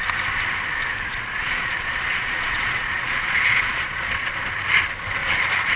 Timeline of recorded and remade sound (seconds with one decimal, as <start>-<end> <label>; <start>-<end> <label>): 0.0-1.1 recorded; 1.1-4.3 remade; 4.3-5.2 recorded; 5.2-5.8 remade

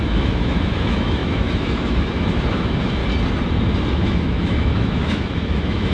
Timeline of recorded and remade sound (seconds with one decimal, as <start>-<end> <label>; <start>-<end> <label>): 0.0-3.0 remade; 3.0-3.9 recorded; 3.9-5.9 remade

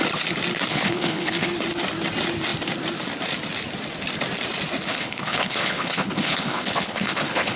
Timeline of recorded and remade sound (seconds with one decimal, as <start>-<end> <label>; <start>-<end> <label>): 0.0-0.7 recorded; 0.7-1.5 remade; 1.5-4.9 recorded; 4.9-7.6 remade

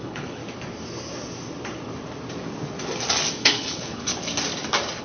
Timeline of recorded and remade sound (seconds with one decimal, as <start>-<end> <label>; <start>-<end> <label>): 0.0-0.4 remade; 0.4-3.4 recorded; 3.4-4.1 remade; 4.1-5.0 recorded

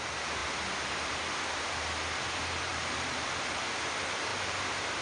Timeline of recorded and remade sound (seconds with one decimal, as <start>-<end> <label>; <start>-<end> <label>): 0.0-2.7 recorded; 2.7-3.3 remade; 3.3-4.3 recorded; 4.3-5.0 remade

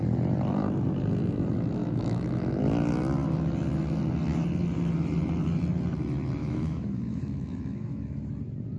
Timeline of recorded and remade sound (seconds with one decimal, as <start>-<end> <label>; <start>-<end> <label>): 0.0-1.8 recorded; 1.8-2.6 remade; 2.6-6.4 recorded; 6.4-8.3 remade; 8.3-8.8 recorded

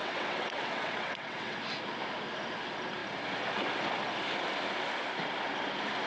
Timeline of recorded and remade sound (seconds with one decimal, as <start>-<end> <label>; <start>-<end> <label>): 0.0-1.6 remade; 1.6-6.1 recorded

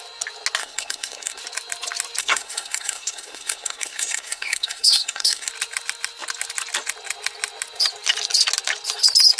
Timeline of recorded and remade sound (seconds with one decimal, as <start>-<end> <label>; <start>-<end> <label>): 0.0-0.6 recorded; 0.6-1.4 remade; 1.4-2.2 recorded; 2.2-5.5 remade; 5.5-9.4 recorded